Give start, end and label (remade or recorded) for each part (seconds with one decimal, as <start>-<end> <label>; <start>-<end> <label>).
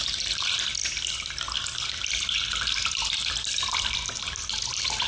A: 0.0-5.1 recorded